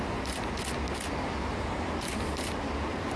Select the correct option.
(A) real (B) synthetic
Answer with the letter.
A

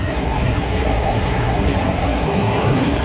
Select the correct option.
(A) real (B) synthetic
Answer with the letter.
B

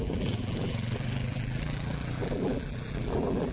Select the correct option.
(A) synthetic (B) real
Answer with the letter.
A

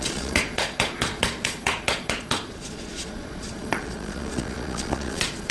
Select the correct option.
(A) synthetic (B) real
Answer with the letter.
A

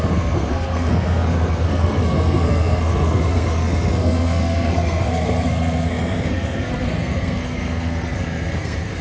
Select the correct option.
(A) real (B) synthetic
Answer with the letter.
B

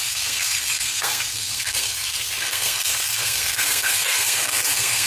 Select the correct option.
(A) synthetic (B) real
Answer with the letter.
A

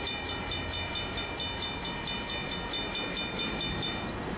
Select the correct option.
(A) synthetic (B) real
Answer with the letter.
B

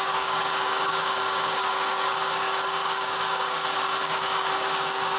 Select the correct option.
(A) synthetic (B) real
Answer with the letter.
A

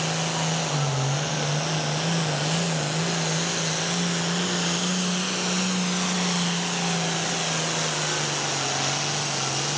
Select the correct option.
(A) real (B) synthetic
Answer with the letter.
A